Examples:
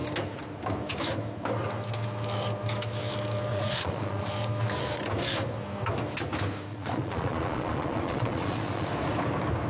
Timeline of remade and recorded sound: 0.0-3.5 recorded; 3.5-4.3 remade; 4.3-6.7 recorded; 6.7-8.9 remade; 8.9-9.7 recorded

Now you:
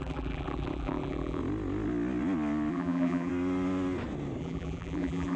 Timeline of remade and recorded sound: 0.0-1.4 remade; 1.4-2.7 recorded; 2.7-3.3 remade; 3.3-4.4 recorded; 4.4-5.4 remade

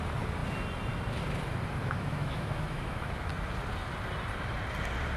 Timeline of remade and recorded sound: 0.0-1.8 recorded; 1.8-3.3 remade; 3.3-5.2 recorded

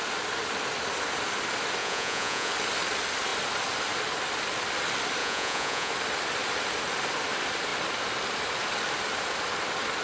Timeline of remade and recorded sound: 0.0-1.8 recorded; 1.8-2.5 remade; 2.5-5.2 recorded; 5.2-5.9 remade; 5.9-10.0 recorded

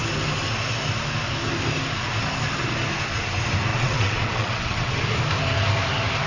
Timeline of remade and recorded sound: 0.0-3.7 recorded; 3.7-4.9 remade; 4.9-6.3 recorded

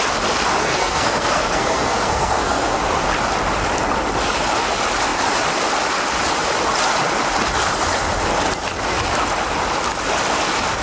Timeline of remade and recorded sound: 0.0-0.6 recorded; 0.6-2.8 remade; 2.8-10.8 recorded

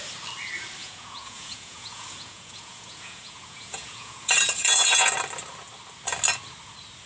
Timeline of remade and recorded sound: 0.0-0.8 recorded; 0.8-5.1 remade; 5.1-7.1 recorded

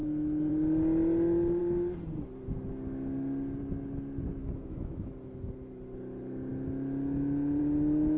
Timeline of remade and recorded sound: 0.0-0.5 remade; 0.5-4.4 recorded; 4.4-5.1 remade; 5.1-8.2 recorded